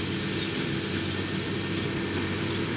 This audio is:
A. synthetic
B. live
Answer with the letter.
B